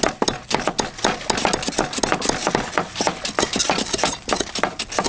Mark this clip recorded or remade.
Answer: recorded